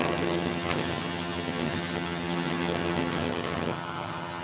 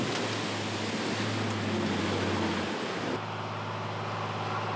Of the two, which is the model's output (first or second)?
first